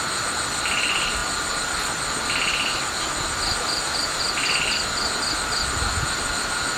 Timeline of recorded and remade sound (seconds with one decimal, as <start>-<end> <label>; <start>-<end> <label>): 0.0-6.8 recorded